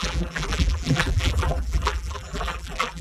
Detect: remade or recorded remade